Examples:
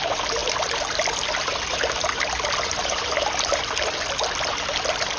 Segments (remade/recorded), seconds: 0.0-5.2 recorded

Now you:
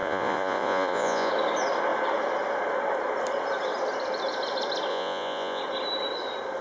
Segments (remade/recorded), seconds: 0.0-1.3 remade; 1.3-4.9 recorded; 4.9-5.6 remade; 5.6-6.6 recorded

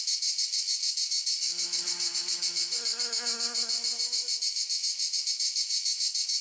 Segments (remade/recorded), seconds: 0.0-6.4 remade

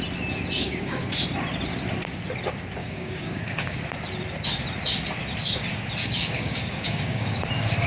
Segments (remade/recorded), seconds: 0.0-0.6 recorded; 0.6-1.1 remade; 1.1-2.8 recorded; 2.8-3.8 remade; 3.8-6.0 recorded; 6.0-7.4 remade; 7.4-7.9 recorded